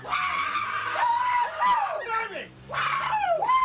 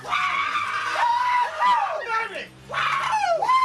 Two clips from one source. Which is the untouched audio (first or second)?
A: second